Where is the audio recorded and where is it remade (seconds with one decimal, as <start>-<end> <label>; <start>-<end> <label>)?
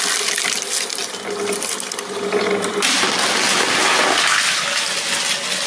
0.0-5.7 recorded